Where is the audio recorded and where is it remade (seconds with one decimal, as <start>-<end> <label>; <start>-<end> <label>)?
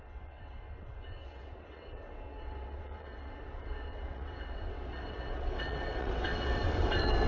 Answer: 0.0-7.3 remade